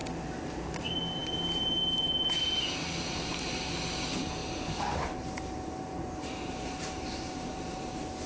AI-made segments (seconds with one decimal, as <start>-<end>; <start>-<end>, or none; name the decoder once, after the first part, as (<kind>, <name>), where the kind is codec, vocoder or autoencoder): 4.4-7.9 (vocoder, BigVGAN v2)